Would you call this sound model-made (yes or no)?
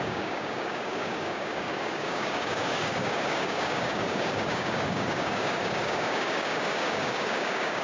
yes